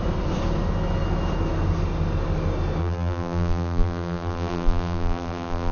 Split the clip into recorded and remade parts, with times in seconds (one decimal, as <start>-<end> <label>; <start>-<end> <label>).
0.0-2.8 recorded; 2.8-5.7 remade